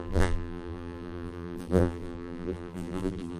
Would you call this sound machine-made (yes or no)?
yes